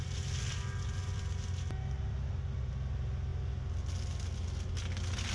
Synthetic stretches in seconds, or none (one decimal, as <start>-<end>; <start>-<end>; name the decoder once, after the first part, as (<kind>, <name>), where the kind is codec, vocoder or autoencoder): none